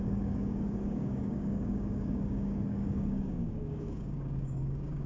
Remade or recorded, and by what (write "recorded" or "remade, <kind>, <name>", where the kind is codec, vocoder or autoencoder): remade, codec, DAC